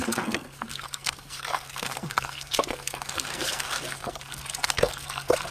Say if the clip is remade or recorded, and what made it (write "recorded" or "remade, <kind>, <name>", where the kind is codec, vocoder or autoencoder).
remade, codec, SNAC